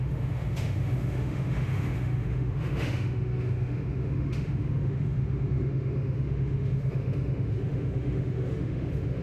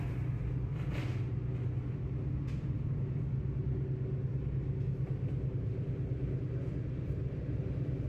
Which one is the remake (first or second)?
first